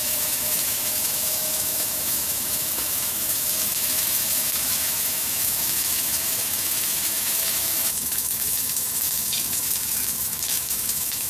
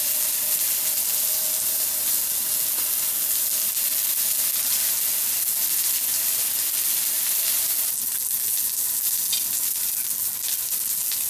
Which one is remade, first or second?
first